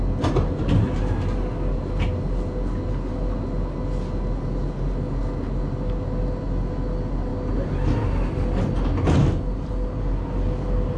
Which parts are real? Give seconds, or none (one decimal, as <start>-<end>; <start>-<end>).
0.0-11.0